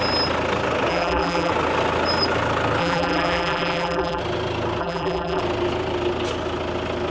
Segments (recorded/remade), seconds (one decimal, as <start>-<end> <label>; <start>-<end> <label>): 0.0-0.9 recorded; 0.9-1.5 remade; 1.5-2.8 recorded; 2.8-4.2 remade; 4.2-4.8 recorded; 4.8-5.4 remade; 5.4-7.1 recorded

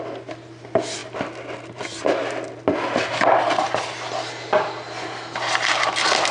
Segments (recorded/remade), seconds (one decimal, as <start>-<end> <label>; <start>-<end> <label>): 0.0-6.3 recorded

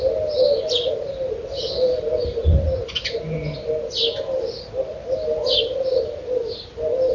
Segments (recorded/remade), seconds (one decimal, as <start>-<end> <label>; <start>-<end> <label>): 0.0-7.1 recorded

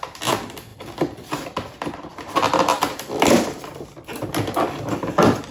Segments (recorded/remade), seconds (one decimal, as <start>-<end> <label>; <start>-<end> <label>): 0.0-0.7 recorded; 0.7-3.6 remade; 3.6-5.5 recorded

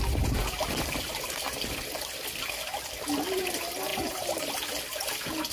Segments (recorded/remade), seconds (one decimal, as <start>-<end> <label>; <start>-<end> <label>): 0.0-3.9 recorded; 3.9-4.7 remade; 4.7-5.5 recorded

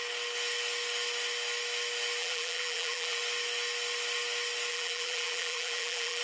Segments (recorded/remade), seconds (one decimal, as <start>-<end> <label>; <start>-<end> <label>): 0.0-2.2 recorded; 2.2-3.2 remade; 3.2-4.7 recorded; 4.7-6.2 remade